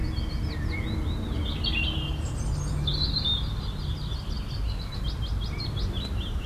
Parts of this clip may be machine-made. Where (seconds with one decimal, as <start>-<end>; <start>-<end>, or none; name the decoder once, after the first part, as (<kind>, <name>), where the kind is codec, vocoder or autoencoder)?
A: none